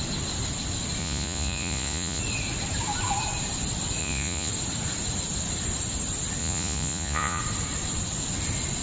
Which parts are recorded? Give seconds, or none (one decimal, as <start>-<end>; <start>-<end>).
0.0-1.0; 2.2-4.0; 4.5-6.4; 7.4-8.8